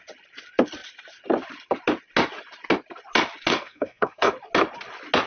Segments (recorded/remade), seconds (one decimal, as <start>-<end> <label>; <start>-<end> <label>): 0.0-3.5 recorded; 3.5-4.3 remade; 4.3-5.3 recorded